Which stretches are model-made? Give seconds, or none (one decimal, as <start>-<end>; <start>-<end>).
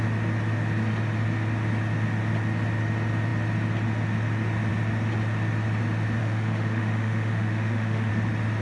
6.2-8.1